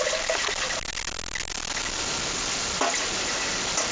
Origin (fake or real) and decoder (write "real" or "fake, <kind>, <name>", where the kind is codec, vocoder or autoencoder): real